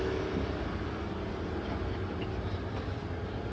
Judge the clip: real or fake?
real